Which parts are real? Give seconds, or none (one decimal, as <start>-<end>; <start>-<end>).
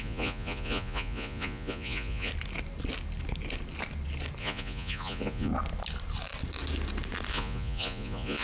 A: 2.3-4.4; 5.5-7.3